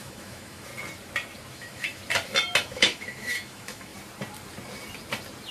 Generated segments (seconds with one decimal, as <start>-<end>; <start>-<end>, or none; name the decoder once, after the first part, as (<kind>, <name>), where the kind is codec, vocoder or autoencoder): 0.0-0.7 (autoencoder, DAC-VAE); 1.5-2.0; 2.6-3.9